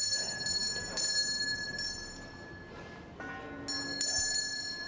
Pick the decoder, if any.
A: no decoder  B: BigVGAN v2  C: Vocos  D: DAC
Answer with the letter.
A